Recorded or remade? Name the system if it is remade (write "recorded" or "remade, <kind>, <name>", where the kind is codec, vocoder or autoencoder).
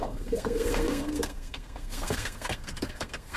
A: remade, codec, SNAC